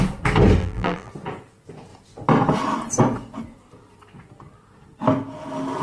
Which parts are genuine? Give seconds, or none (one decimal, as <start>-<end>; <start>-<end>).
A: 0.0-0.6; 1.1-5.8